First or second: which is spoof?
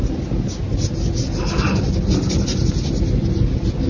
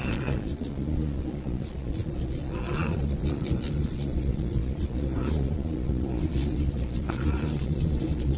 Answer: second